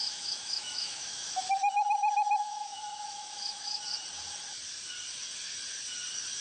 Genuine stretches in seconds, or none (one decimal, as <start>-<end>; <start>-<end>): 3.8-6.4